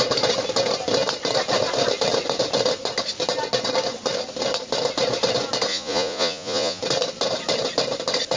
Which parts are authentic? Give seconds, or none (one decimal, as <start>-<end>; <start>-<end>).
0.0-5.7; 6.8-8.4